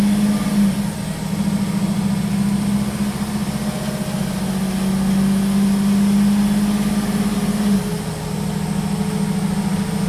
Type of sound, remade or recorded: recorded